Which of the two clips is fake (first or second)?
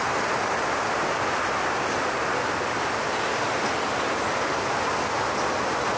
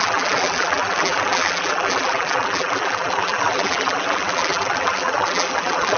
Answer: second